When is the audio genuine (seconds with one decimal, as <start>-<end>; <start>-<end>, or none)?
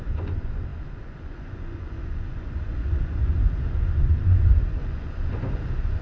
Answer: none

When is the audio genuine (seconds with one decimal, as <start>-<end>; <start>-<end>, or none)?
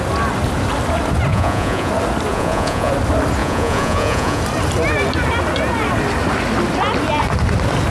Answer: 0.0-1.3; 1.9-2.3; 2.9-3.4; 4.4-7.9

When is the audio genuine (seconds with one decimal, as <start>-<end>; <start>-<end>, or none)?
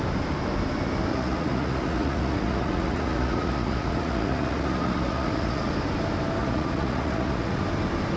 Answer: 0.0-1.1; 5.7-6.4; 7.6-8.2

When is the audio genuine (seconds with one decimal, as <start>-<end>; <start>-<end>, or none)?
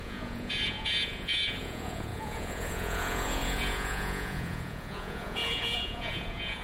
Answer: none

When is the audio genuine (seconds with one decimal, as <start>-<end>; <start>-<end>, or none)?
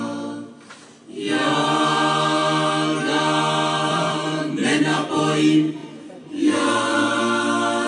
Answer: 0.0-3.9; 4.8-5.8; 7.2-7.9